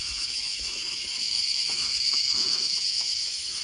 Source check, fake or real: fake